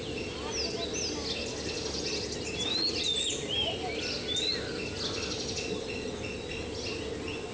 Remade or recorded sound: recorded